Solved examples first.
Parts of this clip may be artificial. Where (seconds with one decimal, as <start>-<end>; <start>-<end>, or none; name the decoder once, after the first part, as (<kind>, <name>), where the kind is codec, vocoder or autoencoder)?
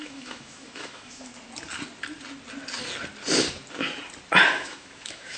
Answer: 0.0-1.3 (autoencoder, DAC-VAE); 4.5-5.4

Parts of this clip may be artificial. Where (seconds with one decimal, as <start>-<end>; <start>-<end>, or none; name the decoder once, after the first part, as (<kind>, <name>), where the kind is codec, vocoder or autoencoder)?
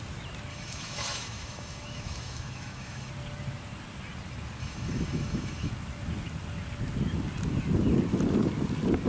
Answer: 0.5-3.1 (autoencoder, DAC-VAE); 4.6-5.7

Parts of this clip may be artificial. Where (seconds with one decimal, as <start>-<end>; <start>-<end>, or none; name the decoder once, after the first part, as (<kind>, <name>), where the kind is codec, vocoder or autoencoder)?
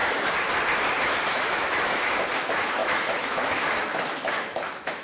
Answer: 1.0-5.0 (autoencoder, DAC-VAE)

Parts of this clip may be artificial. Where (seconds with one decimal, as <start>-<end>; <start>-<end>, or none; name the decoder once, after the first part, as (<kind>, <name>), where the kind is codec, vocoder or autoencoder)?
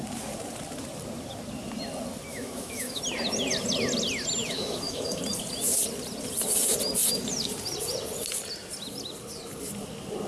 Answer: 2.3-3.0 (autoencoder, DAC-VAE); 4.4-5.2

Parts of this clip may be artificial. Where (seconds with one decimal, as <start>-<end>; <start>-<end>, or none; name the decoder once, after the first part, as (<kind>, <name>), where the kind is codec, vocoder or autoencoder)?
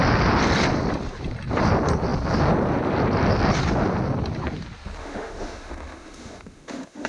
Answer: 5.0-7.1 (autoencoder, DAC-VAE)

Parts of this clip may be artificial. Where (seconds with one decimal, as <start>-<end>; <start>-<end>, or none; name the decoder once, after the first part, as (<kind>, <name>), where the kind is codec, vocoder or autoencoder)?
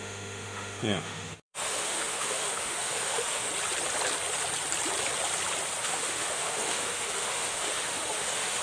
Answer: 0.0-3.5 (autoencoder, DAC-VAE); 5.8-8.6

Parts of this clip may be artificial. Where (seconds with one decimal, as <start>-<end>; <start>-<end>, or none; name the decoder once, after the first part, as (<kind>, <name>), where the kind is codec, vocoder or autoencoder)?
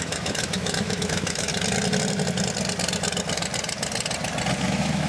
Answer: 0.0-1.5 (autoencoder, DAC-VAE); 4.6-5.1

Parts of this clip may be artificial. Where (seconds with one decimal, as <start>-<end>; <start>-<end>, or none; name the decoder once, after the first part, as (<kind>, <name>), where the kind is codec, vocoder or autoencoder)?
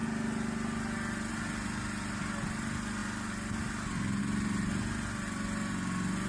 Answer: none